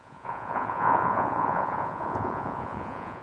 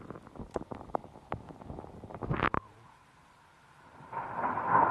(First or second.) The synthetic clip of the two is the first